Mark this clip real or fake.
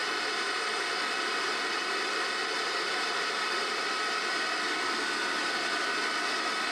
real